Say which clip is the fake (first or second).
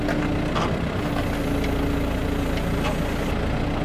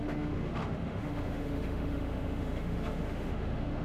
second